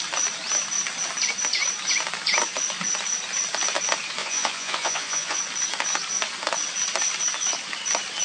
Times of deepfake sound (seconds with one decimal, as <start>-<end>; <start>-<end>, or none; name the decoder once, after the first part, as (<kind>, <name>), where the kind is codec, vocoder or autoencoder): 4.2-5.4 (vocoder, Vocos)